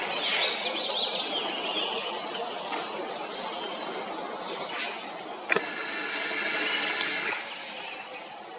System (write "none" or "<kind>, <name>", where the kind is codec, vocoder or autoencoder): none